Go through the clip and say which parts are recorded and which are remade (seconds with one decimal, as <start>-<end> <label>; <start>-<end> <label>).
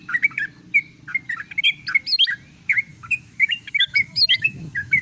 0.0-2.9 recorded; 2.9-5.0 remade